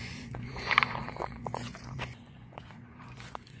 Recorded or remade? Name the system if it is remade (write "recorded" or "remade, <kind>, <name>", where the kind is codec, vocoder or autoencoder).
remade, vocoder, Vocos